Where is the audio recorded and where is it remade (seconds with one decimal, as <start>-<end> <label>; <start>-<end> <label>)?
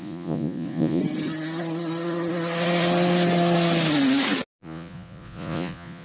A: 0.0-1.0 remade; 1.0-4.6 recorded; 4.6-6.0 remade